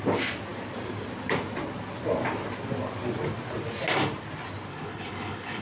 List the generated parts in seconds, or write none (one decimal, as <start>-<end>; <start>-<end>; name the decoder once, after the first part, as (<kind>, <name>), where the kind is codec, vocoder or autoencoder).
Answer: 4.7-5.6 (codec, HILCodec)